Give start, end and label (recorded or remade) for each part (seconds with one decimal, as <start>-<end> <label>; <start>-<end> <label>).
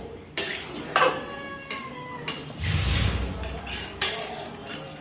0.0-5.0 recorded